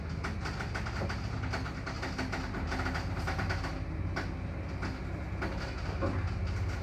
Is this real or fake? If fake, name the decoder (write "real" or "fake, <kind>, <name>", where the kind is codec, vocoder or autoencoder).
real